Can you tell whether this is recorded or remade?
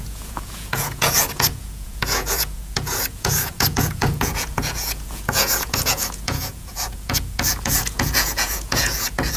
remade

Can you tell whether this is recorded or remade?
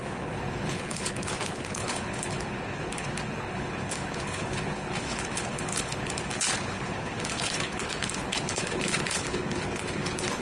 remade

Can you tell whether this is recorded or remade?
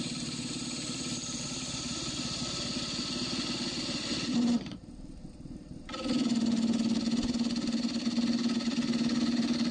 remade